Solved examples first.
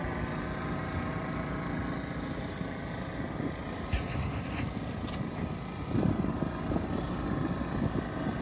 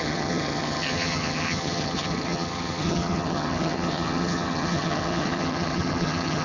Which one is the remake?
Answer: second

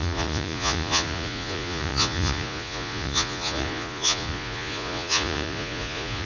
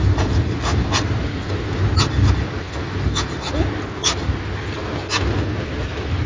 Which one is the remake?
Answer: first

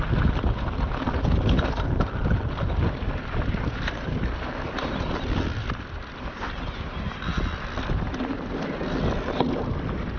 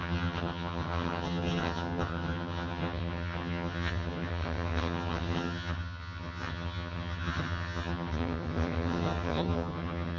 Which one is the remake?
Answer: second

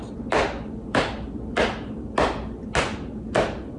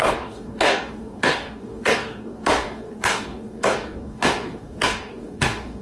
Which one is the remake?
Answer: second